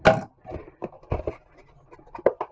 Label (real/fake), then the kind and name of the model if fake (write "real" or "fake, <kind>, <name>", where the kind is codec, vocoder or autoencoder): real